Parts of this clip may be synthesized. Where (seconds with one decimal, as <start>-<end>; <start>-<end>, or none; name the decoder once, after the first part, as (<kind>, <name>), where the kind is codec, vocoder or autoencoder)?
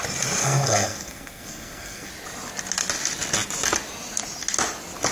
0.4-2.1 (codec, SNAC)